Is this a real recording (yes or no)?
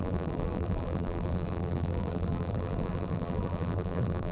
no